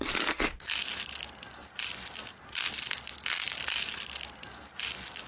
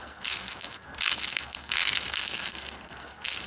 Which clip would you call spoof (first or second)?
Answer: second